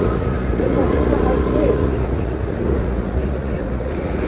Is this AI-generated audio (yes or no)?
yes